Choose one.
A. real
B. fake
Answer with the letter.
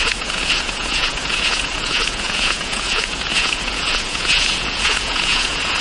B